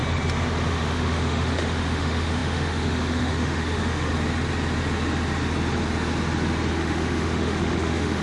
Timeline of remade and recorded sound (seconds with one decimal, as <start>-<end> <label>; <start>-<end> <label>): 0.0-0.7 recorded; 0.7-4.1 remade; 4.1-6.7 recorded; 6.7-8.2 remade